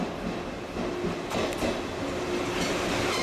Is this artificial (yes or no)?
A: no